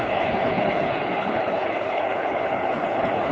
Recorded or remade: remade